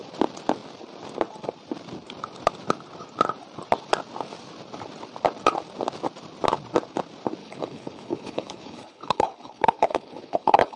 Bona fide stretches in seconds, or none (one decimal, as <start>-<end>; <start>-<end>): 0.0-7.4